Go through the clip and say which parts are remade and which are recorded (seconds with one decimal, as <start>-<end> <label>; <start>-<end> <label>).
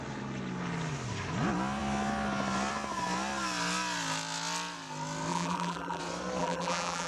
0.0-5.3 recorded; 5.3-6.0 remade; 6.0-6.4 recorded; 6.4-7.1 remade